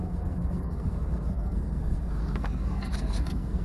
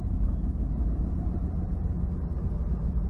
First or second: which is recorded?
second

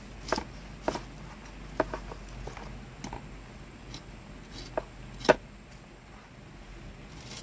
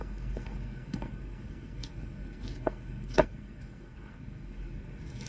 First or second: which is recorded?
first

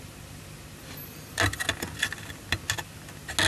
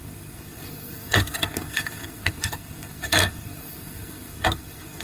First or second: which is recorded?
first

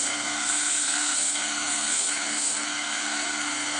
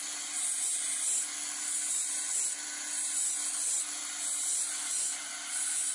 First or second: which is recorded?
second